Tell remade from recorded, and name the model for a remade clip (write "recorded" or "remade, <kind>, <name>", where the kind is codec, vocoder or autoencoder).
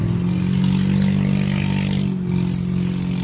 recorded